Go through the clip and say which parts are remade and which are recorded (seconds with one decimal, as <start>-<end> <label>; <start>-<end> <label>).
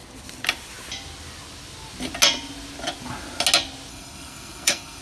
0.0-3.9 recorded; 3.9-5.0 remade